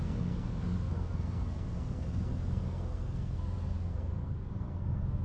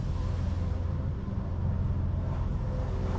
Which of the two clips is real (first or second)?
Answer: second